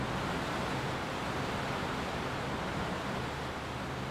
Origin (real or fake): real